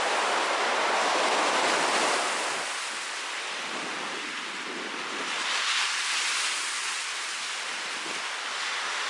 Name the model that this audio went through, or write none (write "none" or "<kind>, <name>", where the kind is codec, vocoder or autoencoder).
none